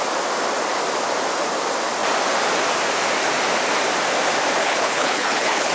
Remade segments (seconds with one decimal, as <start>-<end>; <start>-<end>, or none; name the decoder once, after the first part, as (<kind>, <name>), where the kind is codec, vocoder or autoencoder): 4.6-5.7 (codec, HILCodec)